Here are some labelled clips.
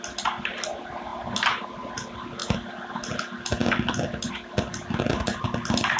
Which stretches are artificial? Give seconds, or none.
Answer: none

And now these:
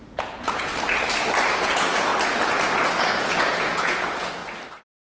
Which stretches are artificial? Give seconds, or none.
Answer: 0.0-0.7 (vocoder, Vocos); 1.5-2.1; 3.0-4.4

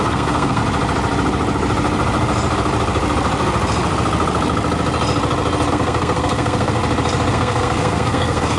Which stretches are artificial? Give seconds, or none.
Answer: 0.0-0.6 (codec, SNAC); 5.7-6.8; 7.3-8.6